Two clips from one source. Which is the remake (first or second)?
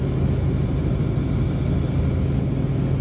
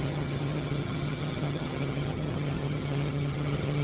second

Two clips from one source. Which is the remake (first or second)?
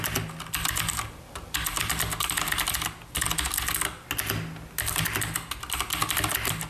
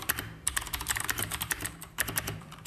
second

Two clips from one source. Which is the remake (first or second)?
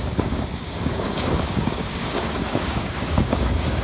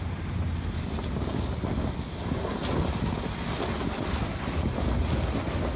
first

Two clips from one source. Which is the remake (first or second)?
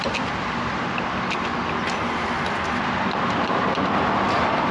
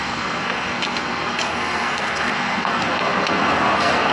second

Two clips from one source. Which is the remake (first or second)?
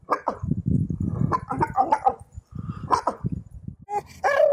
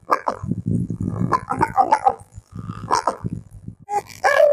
second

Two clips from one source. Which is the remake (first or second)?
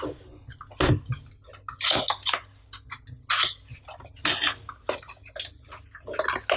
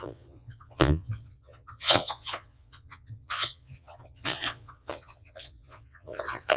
second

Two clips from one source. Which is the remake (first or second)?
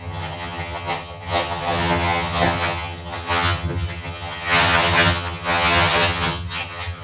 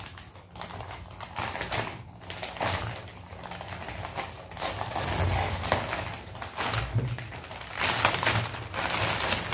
first